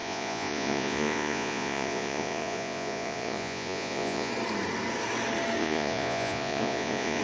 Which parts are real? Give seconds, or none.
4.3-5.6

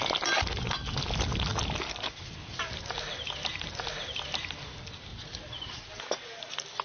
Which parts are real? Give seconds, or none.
0.0-5.1; 5.8-6.8

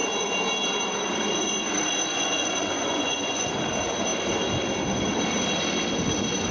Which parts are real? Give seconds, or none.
0.0-2.1; 3.5-6.5

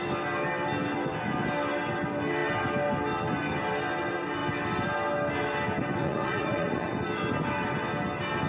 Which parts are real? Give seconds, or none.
0.0-6.0; 6.9-8.5

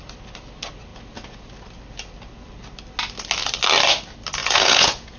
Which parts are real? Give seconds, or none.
0.0-4.4

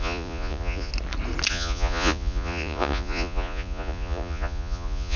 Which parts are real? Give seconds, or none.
0.9-1.5